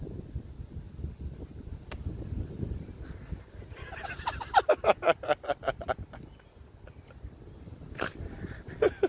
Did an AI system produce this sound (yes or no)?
no